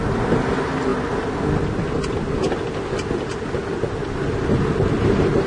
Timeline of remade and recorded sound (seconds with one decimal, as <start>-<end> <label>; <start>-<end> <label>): 0.0-5.5 recorded

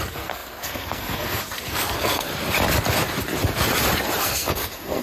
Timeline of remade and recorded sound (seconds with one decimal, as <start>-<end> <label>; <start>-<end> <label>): 0.0-2.3 remade; 2.3-4.2 recorded; 4.2-5.0 remade

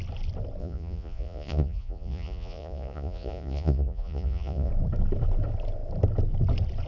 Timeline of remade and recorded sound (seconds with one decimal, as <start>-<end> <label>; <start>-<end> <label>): 0.0-0.6 recorded; 0.6-4.7 remade; 4.7-6.9 recorded